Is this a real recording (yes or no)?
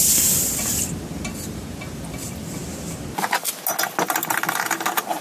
yes